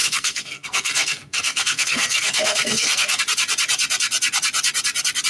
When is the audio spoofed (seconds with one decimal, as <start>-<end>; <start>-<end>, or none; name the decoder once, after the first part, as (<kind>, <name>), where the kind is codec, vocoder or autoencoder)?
0.0-3.2 (codec, SNAC)